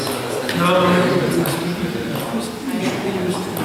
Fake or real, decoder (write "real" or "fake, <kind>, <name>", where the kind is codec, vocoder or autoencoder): real